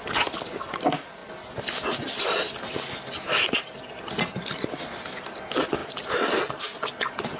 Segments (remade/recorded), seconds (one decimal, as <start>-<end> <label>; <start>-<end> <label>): 0.0-5.8 recorded; 5.8-6.6 remade; 6.6-7.4 recorded